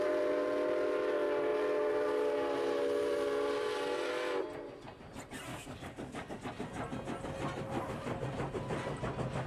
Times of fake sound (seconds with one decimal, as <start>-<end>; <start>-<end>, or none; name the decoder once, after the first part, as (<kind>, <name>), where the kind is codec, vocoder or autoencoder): 5.5-6.4 (codec, DAC)

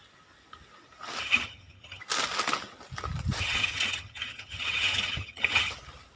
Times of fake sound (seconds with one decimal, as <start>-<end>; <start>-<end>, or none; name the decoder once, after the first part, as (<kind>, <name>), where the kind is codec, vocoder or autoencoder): 1.2-2.0 (vocoder, HiFi-GAN); 3.4-5.7